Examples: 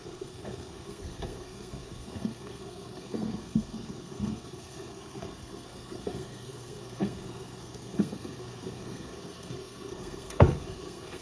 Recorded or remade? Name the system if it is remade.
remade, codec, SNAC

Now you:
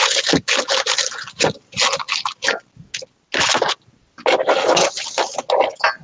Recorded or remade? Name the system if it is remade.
recorded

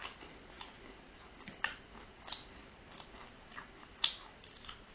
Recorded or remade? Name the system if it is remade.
recorded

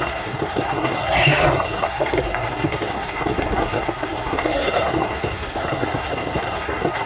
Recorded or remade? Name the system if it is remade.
remade, codec, SNAC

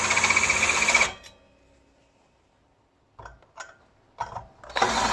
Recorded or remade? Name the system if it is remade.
recorded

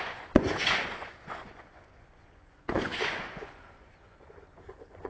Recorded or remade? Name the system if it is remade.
remade, vocoder, Vocos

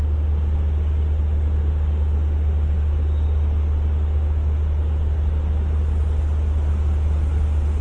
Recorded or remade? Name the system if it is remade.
recorded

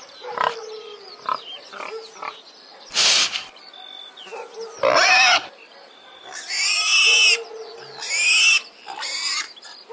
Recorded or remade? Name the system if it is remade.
recorded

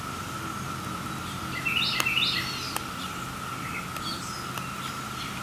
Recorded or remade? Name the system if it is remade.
recorded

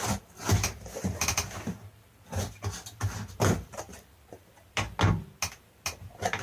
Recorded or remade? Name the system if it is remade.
recorded